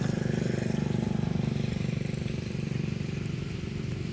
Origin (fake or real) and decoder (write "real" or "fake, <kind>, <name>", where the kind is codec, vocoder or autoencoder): real